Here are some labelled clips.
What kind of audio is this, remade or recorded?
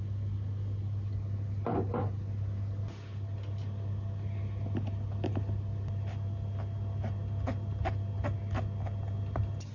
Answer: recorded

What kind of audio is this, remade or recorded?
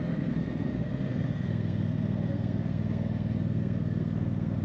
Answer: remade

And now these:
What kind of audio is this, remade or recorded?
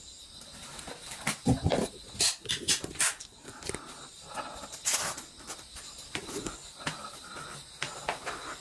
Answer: recorded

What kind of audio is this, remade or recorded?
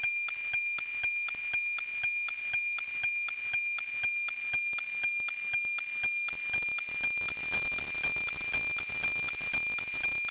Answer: recorded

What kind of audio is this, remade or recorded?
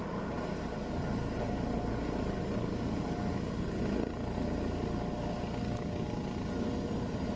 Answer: recorded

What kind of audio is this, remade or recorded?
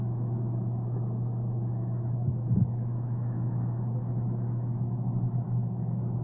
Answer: remade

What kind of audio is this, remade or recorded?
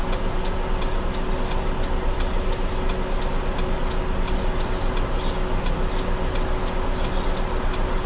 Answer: recorded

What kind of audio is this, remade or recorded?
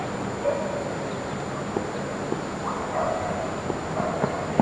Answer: recorded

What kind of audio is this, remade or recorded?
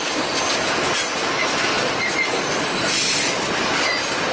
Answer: recorded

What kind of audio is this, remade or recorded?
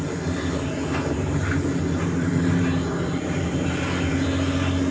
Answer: recorded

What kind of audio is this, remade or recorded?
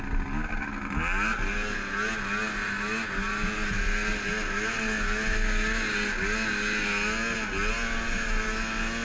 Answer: recorded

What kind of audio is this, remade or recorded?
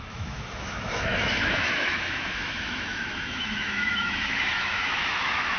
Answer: remade